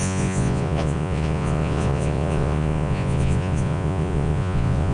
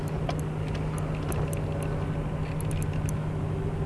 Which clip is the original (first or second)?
second